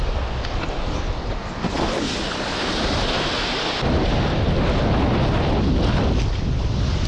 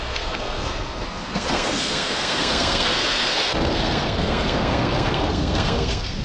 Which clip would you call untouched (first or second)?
first